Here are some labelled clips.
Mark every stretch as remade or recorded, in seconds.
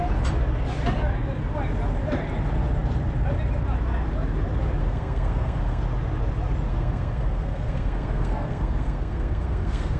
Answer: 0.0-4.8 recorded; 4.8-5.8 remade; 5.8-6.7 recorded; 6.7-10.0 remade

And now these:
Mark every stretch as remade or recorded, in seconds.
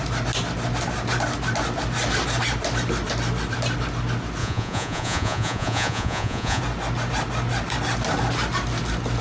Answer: 0.0-4.4 recorded; 4.4-6.6 remade; 6.6-9.2 recorded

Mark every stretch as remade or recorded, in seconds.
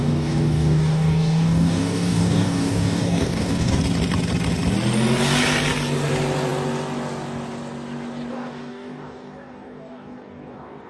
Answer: 0.0-3.8 remade; 3.8-8.3 recorded; 8.3-10.9 remade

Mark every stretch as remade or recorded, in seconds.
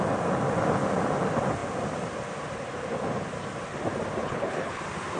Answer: 0.0-4.2 recorded; 4.2-4.8 remade; 4.8-5.2 recorded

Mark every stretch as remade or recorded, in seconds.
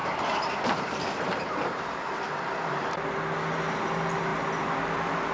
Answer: 0.0-3.2 remade; 3.2-5.3 recorded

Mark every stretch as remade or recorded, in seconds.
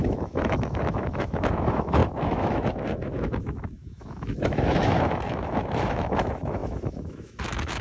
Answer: 0.0-7.8 remade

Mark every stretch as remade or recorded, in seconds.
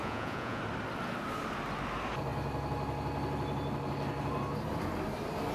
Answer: 0.0-0.6 remade; 0.6-5.5 recorded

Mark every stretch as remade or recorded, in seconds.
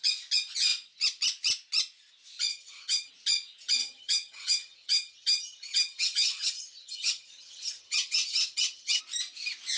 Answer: 0.0-2.5 recorded; 2.5-3.1 remade; 3.1-3.8 recorded; 3.8-9.0 remade; 9.0-9.8 recorded